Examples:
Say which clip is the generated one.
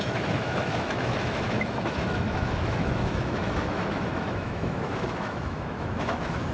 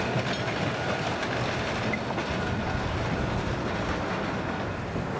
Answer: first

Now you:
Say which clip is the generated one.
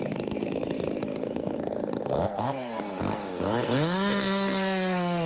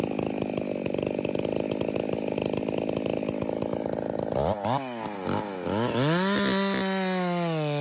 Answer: first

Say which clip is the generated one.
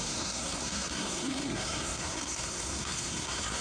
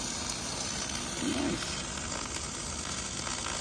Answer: first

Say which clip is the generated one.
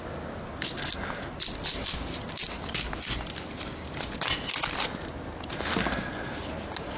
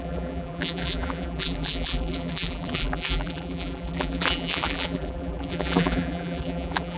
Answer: second